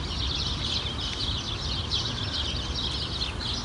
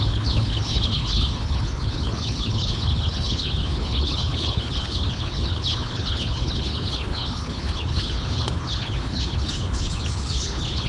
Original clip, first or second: first